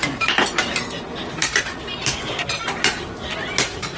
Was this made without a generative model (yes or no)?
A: yes